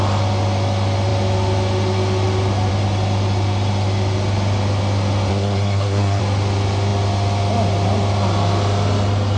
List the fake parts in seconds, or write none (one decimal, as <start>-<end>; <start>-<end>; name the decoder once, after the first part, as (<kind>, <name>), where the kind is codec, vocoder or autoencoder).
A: 5.3-6.2 (codec, SNAC)